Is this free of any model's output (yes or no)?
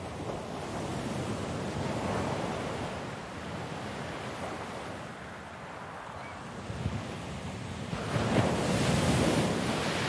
yes